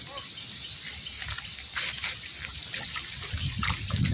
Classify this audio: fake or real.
real